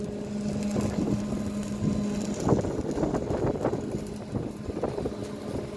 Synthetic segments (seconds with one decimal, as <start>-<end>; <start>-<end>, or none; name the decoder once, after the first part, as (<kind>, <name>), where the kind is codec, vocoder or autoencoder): none